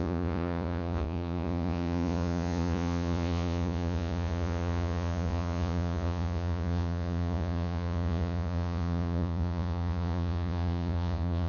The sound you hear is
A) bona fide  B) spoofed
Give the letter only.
B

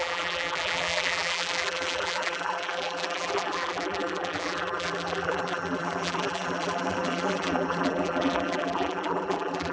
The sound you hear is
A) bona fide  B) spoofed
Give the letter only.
B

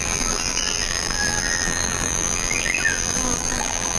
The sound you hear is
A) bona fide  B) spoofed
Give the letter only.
B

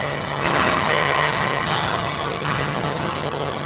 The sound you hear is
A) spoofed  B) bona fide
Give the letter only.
A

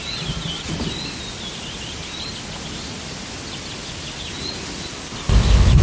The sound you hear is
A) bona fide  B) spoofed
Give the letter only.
A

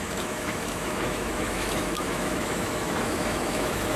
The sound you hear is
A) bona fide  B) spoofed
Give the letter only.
B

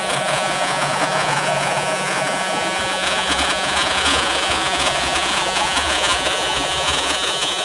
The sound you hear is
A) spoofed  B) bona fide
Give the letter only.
A